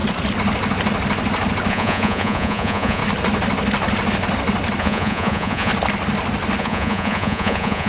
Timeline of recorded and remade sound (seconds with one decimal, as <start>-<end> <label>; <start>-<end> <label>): 0.0-1.7 recorded; 1.7-3.0 remade; 3.0-4.8 recorded; 4.8-5.7 remade; 5.7-6.6 recorded; 6.6-7.9 remade